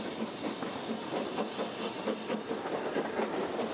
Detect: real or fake real